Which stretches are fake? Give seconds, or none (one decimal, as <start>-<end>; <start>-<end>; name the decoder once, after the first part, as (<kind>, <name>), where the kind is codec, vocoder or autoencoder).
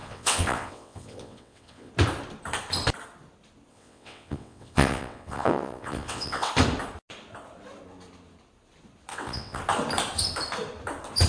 0.0-1.9 (vocoder, WaveNeXt); 3.7-6.5; 9.1-9.6